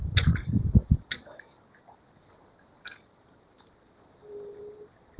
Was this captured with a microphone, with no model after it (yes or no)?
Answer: yes